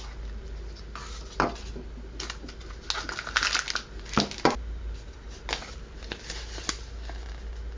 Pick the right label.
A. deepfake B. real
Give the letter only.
B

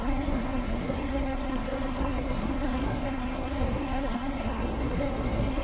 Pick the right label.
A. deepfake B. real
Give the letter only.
A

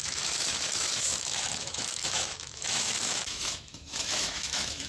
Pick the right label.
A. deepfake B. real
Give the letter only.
A